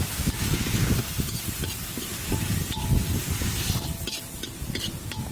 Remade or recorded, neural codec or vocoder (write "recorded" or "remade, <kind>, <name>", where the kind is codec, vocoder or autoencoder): recorded